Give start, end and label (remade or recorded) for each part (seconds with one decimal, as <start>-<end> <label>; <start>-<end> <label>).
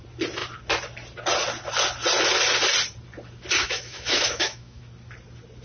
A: 0.0-3.6 recorded; 3.6-4.8 remade; 4.8-5.6 recorded